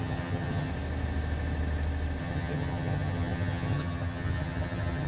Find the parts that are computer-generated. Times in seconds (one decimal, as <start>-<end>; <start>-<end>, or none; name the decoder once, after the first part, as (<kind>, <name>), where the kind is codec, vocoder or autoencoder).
0.0-0.7 (vocoder, HiFi-GAN); 2.2-5.1